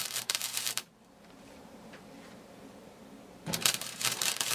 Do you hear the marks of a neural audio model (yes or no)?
yes